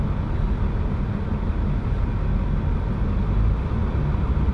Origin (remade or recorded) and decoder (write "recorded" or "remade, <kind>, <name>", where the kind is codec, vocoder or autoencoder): recorded